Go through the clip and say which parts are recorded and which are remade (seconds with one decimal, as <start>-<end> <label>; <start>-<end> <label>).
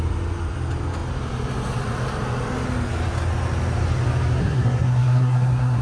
0.0-4.4 recorded; 4.4-5.8 remade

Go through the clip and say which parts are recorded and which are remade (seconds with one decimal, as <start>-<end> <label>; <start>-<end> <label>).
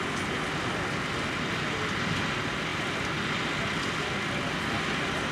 0.0-5.3 recorded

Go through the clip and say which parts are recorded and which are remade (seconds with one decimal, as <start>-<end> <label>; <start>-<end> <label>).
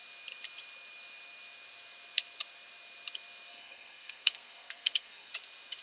0.0-3.5 recorded; 3.5-5.3 remade; 5.3-5.8 recorded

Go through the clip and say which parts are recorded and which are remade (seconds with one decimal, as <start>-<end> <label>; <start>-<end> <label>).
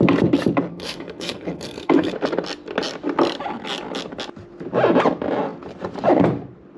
0.0-0.7 recorded; 0.7-2.1 remade; 2.1-6.8 recorded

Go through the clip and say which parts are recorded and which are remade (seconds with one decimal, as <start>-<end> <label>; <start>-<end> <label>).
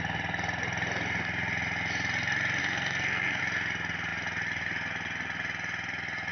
0.0-2.6 recorded; 2.6-3.4 remade; 3.4-6.3 recorded